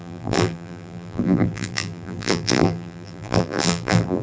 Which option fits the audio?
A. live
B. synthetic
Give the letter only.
B